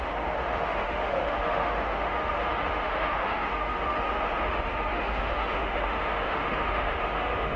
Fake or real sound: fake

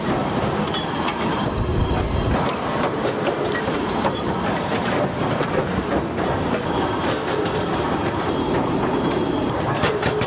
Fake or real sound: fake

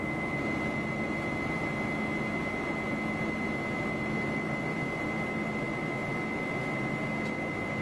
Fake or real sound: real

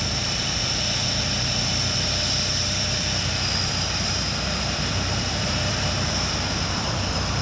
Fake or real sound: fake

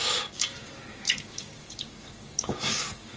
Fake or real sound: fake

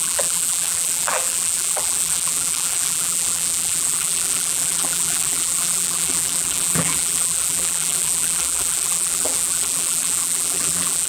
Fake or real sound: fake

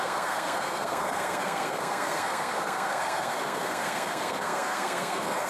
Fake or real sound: fake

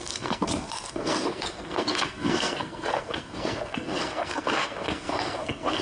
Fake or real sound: fake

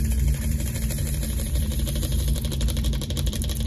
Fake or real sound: fake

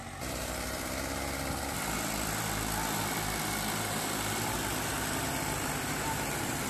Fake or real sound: fake